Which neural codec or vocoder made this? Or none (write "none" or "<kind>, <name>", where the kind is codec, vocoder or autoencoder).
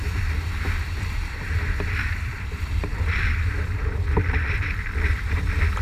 none